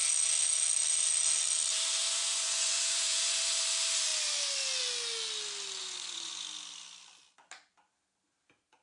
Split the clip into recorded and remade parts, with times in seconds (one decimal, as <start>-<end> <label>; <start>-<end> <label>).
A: 0.0-2.0 recorded; 2.0-3.6 remade; 3.6-5.8 recorded; 5.8-6.3 remade; 6.3-8.8 recorded